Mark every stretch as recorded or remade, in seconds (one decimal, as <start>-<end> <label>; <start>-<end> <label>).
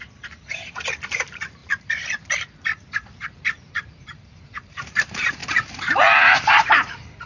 0.0-7.3 remade